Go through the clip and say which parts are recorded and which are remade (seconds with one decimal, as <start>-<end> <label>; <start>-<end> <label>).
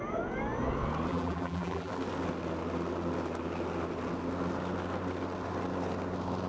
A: 0.0-1.1 recorded; 1.1-1.9 remade; 1.9-6.5 recorded